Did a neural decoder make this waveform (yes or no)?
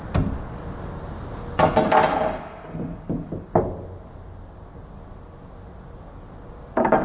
no